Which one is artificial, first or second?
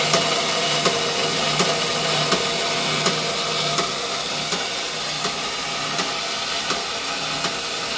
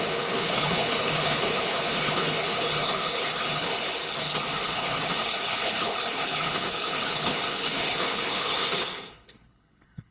second